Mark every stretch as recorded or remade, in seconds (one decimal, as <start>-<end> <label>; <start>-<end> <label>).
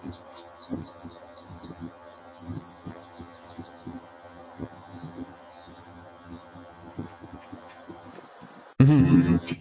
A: 0.0-8.1 remade; 8.1-9.0 recorded; 9.0-9.6 remade